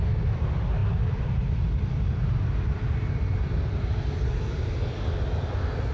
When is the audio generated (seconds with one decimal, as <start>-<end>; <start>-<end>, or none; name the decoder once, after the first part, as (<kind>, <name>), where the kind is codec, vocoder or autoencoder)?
none